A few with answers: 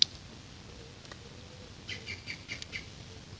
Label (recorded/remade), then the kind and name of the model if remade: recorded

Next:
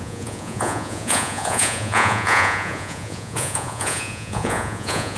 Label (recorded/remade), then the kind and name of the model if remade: remade, vocoder, Vocos